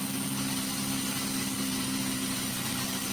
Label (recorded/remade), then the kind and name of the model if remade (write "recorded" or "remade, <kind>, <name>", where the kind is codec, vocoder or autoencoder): recorded